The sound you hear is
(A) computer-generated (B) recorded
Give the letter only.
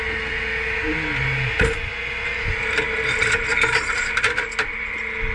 B